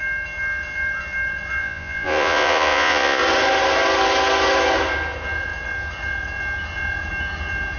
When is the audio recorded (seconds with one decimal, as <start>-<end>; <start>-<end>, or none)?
0.0-1.6; 3.2-7.8

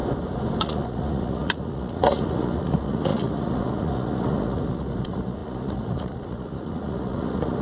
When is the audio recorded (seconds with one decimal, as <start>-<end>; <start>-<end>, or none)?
0.0-0.6